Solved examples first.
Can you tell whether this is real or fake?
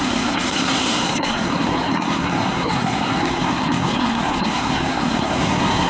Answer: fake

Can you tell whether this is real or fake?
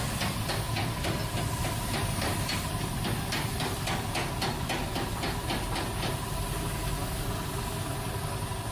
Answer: real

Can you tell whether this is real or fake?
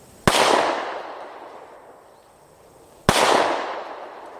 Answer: real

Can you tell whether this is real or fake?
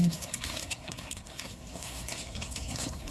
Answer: fake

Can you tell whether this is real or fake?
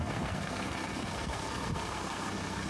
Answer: fake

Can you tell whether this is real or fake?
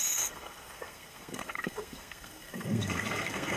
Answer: fake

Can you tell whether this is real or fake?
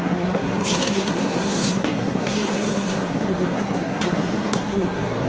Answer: fake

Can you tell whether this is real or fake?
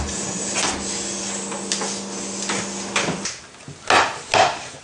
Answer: real